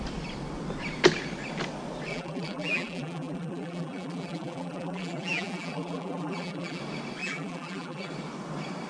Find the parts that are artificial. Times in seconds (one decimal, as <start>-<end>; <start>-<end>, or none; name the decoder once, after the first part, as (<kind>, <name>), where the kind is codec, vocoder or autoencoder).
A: 2.1-6.8 (vocoder, BigVGAN v2); 7.2-8.1